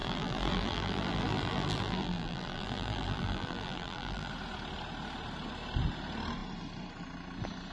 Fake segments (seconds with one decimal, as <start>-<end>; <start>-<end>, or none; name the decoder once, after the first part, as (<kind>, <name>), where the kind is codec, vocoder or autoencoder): 0.0-4.3 (vocoder, BigVGAN v2)